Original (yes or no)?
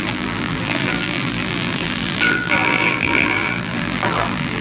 no